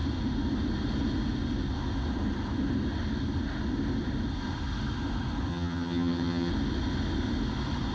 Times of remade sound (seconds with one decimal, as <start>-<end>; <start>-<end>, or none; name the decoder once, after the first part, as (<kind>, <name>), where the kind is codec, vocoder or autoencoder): 5.5-6.5 (vocoder, HiFi-GAN)